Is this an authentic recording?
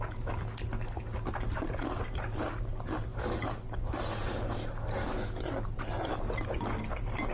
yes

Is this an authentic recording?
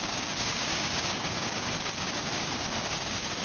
no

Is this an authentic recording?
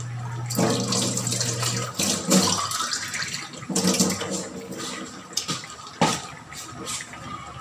yes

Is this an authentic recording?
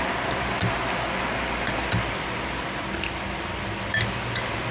no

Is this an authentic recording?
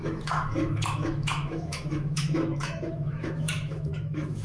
no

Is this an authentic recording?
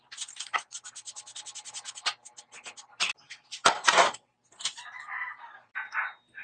yes